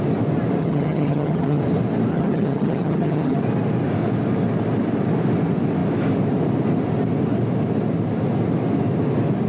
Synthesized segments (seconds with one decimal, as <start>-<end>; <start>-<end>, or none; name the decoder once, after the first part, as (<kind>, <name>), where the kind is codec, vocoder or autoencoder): 0.6-1.6 (vocoder, HiFi-GAN); 2.1-3.4